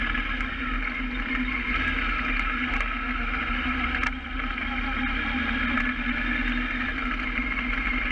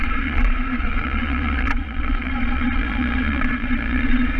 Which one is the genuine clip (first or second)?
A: first